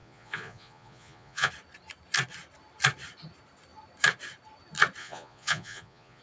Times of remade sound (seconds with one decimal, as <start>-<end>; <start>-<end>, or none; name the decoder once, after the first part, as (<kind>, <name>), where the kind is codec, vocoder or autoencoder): 0.0-1.5 (vocoder, Vocos); 5.0-6.2